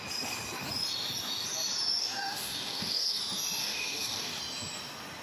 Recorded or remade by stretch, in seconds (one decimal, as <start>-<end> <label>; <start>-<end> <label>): 0.0-2.0 recorded; 2.0-3.2 remade; 3.2-3.6 recorded; 3.6-4.4 remade; 4.4-5.2 recorded